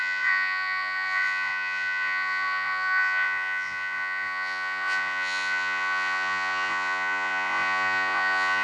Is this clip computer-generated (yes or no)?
yes